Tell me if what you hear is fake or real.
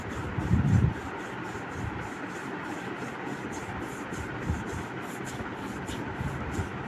real